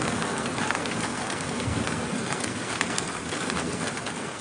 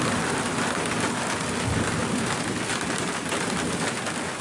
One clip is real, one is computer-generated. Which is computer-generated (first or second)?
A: first